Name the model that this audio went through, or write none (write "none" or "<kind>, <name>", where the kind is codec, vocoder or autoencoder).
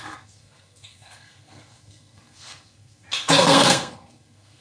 codec, SNAC